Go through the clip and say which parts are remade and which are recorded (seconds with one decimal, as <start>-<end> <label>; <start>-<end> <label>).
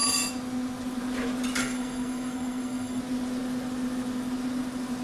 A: 0.0-1.6 recorded; 1.6-3.0 remade; 3.0-5.0 recorded